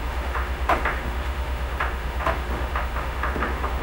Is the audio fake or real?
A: fake